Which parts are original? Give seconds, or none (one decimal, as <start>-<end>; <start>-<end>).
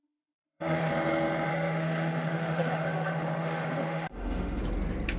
0.9-1.5; 4.6-5.2